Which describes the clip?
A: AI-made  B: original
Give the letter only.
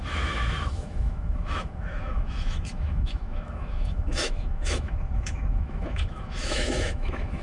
A